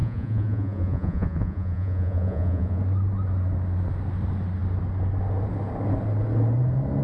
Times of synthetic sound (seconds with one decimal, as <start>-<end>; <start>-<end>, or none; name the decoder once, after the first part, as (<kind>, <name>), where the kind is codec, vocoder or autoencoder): 0.0-2.8 (vocoder, Vocos)